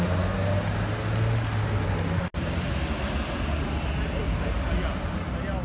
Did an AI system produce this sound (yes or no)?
no